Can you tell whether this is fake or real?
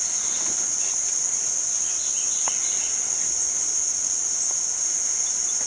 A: real